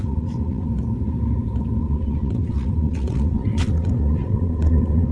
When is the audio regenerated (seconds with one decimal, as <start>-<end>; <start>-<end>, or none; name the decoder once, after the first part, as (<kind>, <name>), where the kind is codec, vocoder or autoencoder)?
0.0-0.7 (vocoder, WaveNeXt); 1.8-5.1